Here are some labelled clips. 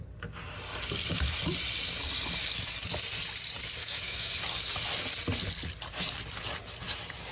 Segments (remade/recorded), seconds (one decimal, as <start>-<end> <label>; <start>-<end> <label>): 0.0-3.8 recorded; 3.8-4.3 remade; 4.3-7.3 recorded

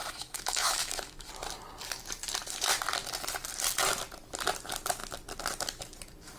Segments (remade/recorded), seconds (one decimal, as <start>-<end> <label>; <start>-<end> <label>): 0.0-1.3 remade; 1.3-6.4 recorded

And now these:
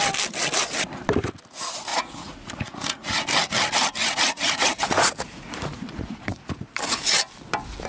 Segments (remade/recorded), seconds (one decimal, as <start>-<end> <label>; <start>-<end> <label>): 0.0-1.9 recorded; 1.9-3.2 remade; 3.2-4.0 recorded; 4.0-6.8 remade; 6.8-7.9 recorded

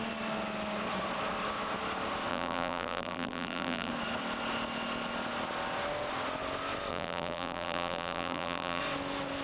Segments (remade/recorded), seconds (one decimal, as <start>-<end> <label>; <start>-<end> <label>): 0.0-2.3 recorded; 2.3-3.9 remade; 3.9-6.9 recorded; 6.9-8.8 remade; 8.8-9.4 recorded

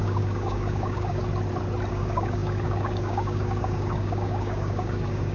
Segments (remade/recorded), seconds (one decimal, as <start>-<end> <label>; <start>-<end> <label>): 0.0-1.2 remade; 1.2-1.9 recorded; 1.9-5.3 remade